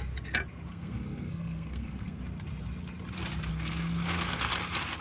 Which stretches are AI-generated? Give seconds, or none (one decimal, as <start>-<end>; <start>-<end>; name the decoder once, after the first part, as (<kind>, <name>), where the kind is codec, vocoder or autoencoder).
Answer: 0.7-2.2 (codec, SNAC); 3.5-4.6